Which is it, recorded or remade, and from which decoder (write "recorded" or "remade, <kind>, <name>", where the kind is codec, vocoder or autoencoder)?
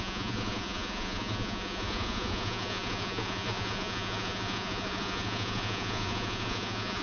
remade, vocoder, Vocos